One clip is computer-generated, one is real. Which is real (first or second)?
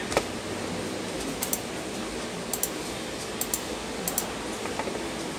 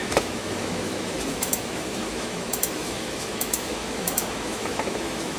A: first